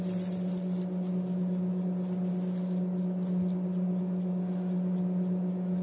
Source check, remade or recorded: recorded